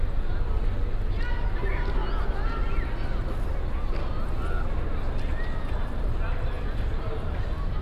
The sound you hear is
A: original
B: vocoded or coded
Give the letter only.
A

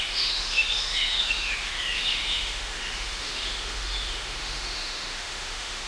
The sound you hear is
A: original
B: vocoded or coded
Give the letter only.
B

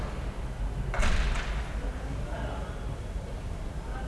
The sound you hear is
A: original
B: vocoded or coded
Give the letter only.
A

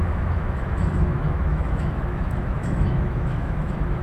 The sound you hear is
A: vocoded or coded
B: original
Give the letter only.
A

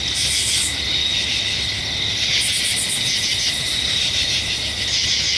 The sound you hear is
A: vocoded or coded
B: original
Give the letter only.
B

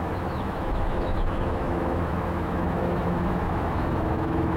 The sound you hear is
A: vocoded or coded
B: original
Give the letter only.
A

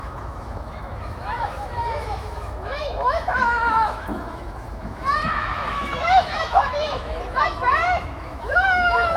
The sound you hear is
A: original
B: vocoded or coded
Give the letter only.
B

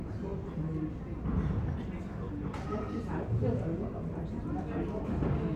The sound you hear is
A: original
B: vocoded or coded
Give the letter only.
A